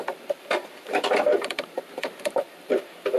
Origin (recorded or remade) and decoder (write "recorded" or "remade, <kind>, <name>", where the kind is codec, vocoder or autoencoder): remade, vocoder, BigVGAN v2